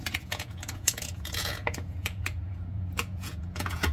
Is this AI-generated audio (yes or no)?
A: yes